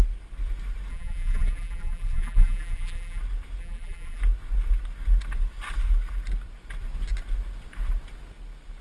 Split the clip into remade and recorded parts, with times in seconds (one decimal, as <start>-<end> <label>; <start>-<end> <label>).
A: 0.0-0.9 recorded; 0.9-3.2 remade; 3.2-3.6 recorded; 3.6-4.2 remade; 4.2-8.8 recorded